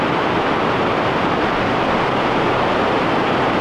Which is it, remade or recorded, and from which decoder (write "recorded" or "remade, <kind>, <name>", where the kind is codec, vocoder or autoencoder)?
recorded